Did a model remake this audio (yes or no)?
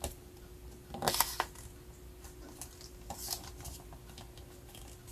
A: no